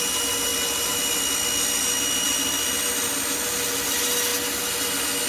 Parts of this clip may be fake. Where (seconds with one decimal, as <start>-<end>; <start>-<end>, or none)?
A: none